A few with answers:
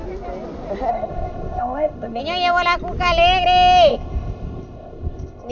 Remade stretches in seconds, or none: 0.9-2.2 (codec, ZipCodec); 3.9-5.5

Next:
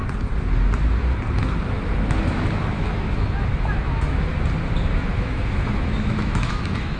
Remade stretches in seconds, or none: 1.6-4.3 (autoencoder, DAC-VAE); 5.1-7.0

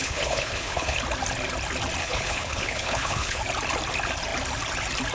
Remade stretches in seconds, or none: 0.0-1.0 (codec, HILCodec); 2.0-3.4